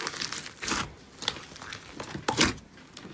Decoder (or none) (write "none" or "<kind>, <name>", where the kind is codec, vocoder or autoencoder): none